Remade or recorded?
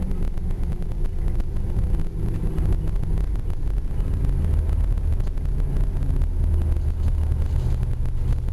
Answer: recorded